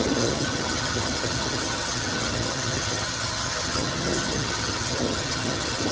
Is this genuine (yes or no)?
no